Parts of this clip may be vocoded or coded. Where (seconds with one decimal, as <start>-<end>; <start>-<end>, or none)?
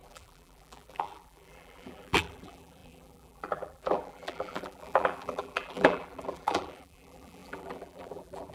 0.0-8.5